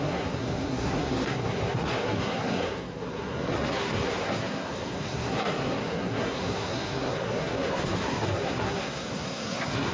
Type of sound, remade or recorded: remade